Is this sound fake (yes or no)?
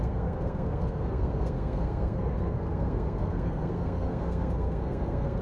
yes